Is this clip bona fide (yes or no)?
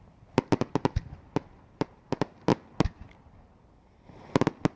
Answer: yes